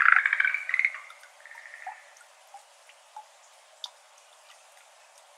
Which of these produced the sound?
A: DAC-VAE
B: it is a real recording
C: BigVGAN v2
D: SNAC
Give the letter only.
B